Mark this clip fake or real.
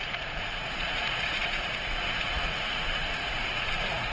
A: fake